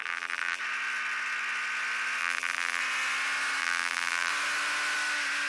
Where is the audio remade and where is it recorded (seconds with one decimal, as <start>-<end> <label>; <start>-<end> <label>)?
0.0-0.6 remade; 0.6-2.2 recorded; 2.2-2.8 remade; 2.8-3.6 recorded; 3.6-4.3 remade; 4.3-5.5 recorded